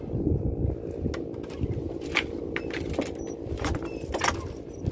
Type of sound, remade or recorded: recorded